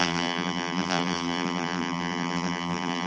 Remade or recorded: remade